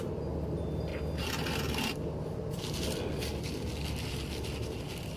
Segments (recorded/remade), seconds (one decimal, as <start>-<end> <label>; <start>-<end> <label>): 0.0-5.2 recorded